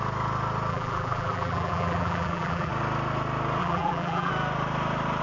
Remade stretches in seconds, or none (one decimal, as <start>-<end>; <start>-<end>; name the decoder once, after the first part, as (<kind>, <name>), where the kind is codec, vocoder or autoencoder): 0.7-2.7 (vocoder, BigVGAN v2); 3.6-4.3